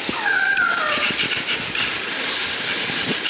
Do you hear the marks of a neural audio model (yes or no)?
no